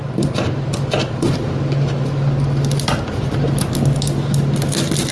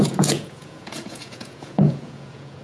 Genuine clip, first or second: first